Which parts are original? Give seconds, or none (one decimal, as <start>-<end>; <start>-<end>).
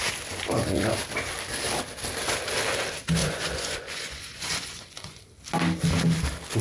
0.0-3.2; 5.2-6.6